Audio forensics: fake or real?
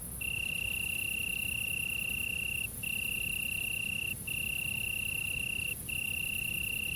real